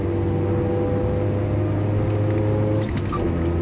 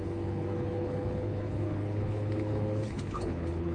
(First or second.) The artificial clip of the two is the second